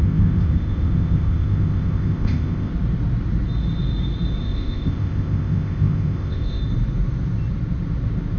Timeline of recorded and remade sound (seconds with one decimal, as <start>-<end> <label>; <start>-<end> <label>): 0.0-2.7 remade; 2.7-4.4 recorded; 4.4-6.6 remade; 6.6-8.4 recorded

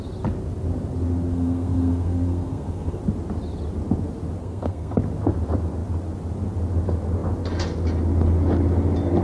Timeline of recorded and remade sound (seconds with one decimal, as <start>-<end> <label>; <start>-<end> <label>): 0.0-1.3 recorded; 1.3-3.0 remade; 3.0-4.4 recorded; 4.4-5.0 remade; 5.0-9.2 recorded

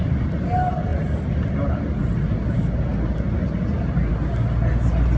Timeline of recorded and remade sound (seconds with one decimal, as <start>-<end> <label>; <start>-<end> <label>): 0.0-5.2 recorded